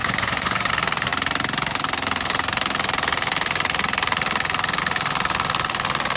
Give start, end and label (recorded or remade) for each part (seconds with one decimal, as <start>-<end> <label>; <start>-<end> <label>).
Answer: 0.0-0.7 remade; 0.7-6.2 recorded